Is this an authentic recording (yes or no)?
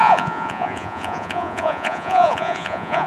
no